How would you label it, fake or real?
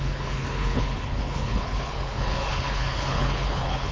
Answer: fake